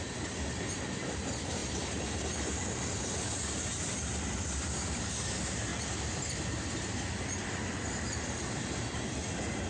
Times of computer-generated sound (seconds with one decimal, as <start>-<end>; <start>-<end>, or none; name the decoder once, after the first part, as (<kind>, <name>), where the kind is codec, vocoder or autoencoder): none